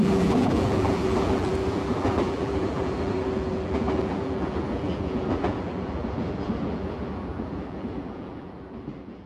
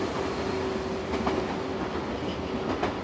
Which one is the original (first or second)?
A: second